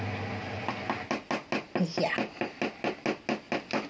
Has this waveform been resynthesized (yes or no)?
no